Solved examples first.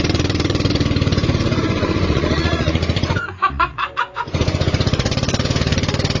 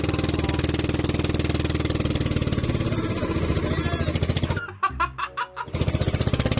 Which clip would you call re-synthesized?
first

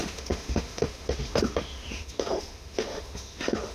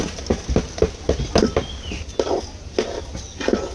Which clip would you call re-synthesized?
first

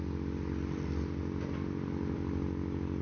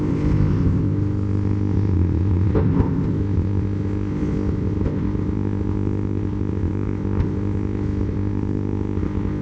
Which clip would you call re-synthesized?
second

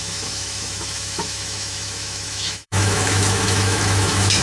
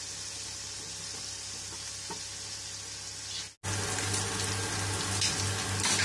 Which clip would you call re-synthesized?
first